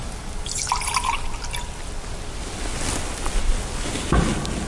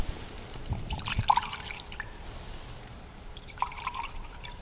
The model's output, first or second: second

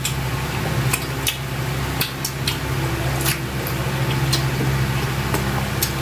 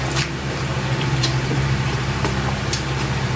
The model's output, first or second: second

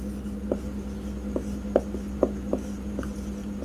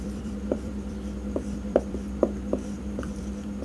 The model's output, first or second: second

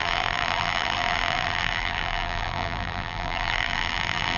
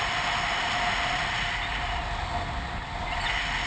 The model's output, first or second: first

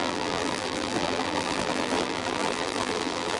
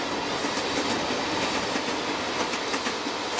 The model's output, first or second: first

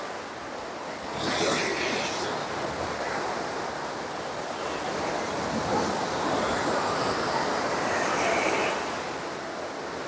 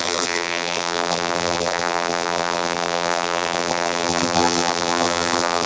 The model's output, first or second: second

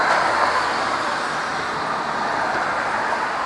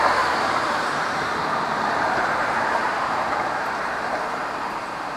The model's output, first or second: second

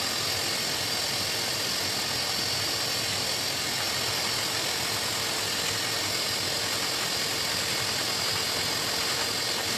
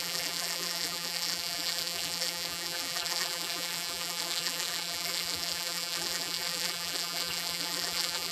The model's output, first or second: second